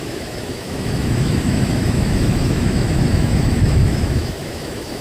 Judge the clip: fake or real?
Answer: fake